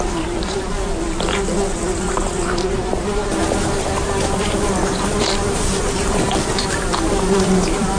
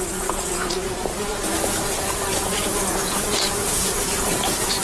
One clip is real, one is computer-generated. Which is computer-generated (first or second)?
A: second